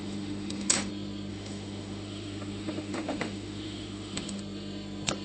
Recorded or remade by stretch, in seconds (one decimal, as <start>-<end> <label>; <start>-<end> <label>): 0.0-0.9 remade; 0.9-1.3 recorded; 1.3-4.4 remade; 4.4-5.2 recorded